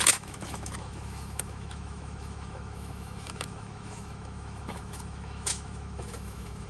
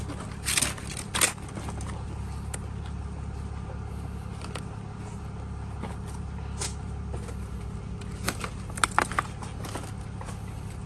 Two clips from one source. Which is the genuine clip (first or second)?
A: second